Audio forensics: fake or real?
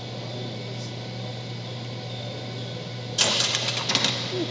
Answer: real